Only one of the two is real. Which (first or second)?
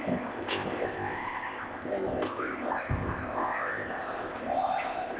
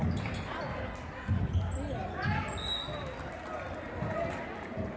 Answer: second